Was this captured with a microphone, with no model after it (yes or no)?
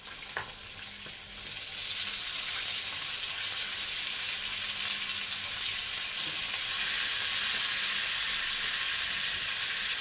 yes